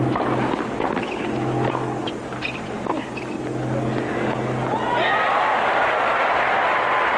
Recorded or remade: recorded